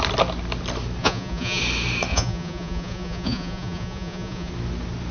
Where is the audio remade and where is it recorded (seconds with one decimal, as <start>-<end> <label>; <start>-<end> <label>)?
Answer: 0.0-1.0 recorded; 1.0-1.6 remade; 1.6-2.1 recorded; 2.1-4.5 remade; 4.5-5.1 recorded